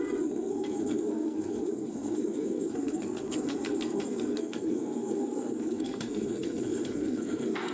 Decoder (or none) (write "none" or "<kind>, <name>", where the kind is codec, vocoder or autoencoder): codec, SNAC